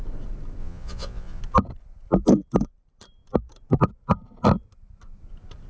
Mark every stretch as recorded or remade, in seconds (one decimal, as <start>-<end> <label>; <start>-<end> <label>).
0.0-0.6 recorded; 0.6-1.4 remade; 1.4-5.7 recorded